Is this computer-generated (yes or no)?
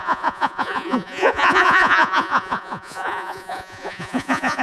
yes